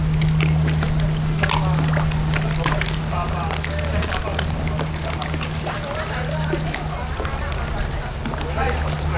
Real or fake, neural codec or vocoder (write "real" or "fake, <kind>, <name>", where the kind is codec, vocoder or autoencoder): real